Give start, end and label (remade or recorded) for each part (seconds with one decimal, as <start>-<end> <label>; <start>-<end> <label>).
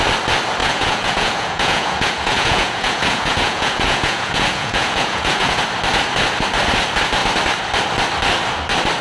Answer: 0.0-0.6 recorded; 0.6-5.6 remade; 5.6-9.0 recorded